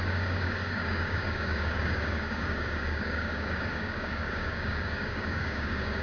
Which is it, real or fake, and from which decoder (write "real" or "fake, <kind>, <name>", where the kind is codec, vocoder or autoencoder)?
fake, codec, DAC